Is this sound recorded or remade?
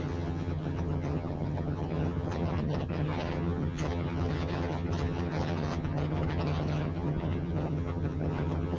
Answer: remade